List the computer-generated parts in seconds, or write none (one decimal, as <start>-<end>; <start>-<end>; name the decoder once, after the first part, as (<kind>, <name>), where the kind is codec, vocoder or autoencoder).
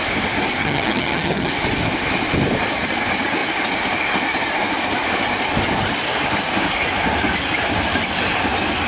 0.6-1.5 (vocoder, HiFi-GAN)